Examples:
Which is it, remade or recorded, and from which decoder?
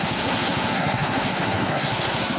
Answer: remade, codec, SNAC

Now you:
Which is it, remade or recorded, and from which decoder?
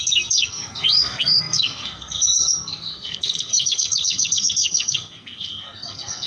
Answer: remade, codec, SNAC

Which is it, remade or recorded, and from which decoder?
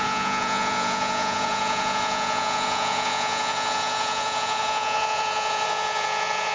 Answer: remade, vocoder, Vocos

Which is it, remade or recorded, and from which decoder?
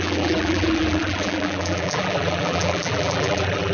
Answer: remade, vocoder, BigVGAN v2